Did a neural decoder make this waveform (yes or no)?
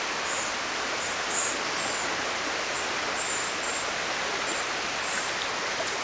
no